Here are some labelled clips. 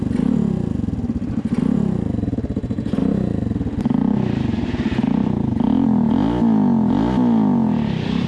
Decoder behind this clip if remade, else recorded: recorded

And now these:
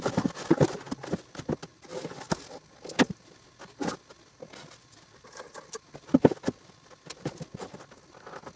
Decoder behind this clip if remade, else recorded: recorded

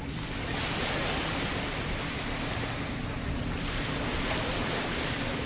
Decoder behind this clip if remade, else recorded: recorded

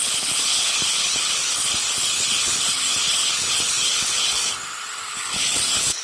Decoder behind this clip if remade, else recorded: remade, codec, HILCodec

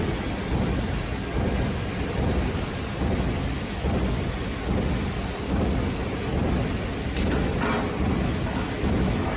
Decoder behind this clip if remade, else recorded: recorded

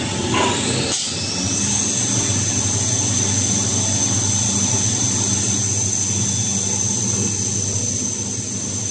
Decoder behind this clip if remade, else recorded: recorded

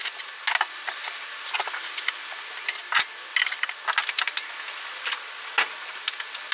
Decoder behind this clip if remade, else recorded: recorded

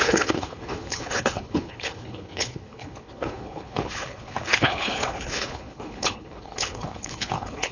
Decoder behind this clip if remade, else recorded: remade, codec, HILCodec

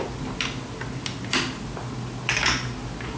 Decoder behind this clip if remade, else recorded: recorded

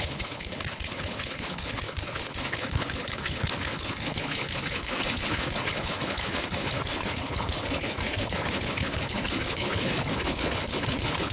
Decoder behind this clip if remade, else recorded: remade, codec, HILCodec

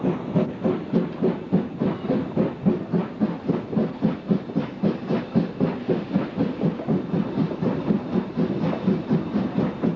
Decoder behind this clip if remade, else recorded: recorded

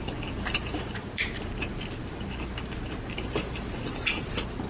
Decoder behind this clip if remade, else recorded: recorded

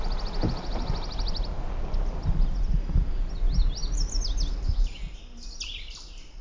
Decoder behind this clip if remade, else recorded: recorded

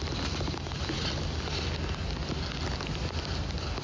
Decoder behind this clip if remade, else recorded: recorded